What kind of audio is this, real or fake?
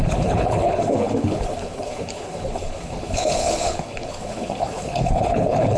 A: fake